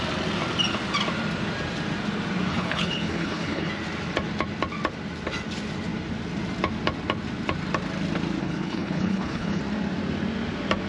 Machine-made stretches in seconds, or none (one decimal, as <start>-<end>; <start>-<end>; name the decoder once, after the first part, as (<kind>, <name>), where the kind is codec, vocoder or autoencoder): 2.5-3.7 (codec, HILCodec); 8.4-9.6